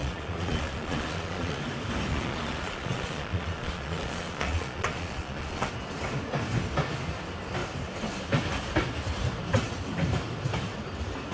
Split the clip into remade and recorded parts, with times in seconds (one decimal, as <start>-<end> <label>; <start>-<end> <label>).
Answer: 0.0-1.6 remade; 1.6-2.1 recorded; 2.1-5.7 remade; 5.7-11.3 recorded